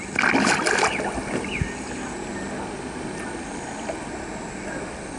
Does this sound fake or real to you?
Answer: real